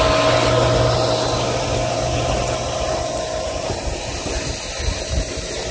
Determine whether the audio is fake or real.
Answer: real